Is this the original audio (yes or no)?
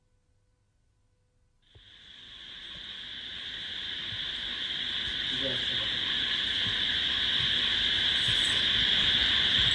yes